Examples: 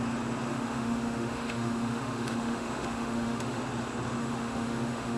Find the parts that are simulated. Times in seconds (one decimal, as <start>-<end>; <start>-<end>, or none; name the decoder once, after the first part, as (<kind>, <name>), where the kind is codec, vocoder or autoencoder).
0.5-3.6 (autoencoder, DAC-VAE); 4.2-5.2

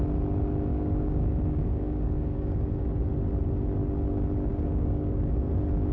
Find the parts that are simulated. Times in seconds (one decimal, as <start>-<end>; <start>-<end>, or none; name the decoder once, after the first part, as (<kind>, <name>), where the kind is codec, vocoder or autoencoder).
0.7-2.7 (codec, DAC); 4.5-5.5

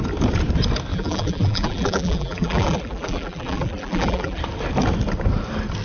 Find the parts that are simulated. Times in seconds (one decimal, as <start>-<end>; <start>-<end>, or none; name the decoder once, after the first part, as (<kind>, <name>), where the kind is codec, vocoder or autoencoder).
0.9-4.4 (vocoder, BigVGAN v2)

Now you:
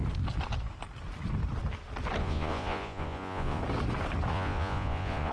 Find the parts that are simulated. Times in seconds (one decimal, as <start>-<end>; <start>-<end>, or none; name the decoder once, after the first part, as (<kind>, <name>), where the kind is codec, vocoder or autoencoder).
2.2-3.6 (vocoder, Vocos); 4.3-5.3

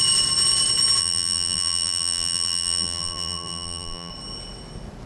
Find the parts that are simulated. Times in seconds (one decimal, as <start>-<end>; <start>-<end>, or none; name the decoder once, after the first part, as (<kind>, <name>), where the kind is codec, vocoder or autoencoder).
1.0-4.1 (vocoder, BigVGAN v2)

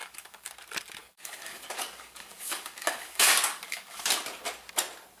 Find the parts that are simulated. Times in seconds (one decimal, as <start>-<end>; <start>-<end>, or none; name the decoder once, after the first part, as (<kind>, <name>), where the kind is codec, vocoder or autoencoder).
0.0-0.5 (codec, DAC); 1.0-4.1

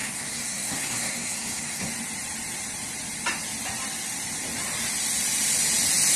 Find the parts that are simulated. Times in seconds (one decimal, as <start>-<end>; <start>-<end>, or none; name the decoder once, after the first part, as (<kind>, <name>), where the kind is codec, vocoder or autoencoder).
0.0-1.9 (codec, SNAC)